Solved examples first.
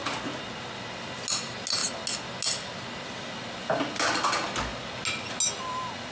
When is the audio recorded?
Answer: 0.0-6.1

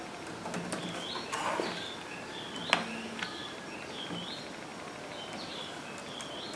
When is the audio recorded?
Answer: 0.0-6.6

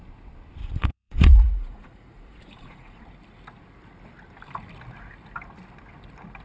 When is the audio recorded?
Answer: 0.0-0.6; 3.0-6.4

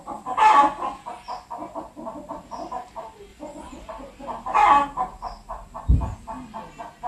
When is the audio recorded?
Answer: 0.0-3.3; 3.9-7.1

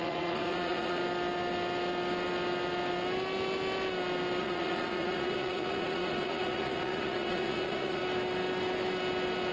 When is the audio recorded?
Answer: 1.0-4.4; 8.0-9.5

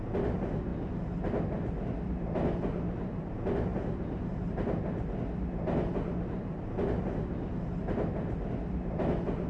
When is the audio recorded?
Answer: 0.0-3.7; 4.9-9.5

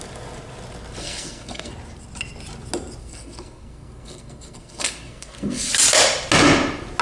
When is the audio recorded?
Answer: 0.0-1.0; 1.7-3.0; 5.7-7.0